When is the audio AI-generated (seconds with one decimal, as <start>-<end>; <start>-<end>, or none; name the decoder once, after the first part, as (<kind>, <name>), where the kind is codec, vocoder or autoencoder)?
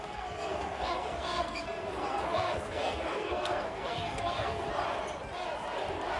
0.0-4.7 (codec, SNAC)